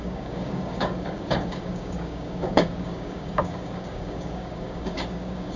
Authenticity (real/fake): fake